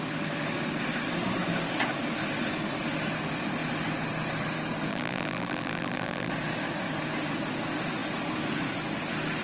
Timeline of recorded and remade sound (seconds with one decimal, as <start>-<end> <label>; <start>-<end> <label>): 0.0-4.9 recorded; 4.9-6.3 remade; 6.3-9.4 recorded